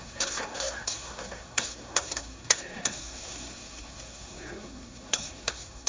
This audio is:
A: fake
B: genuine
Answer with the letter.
A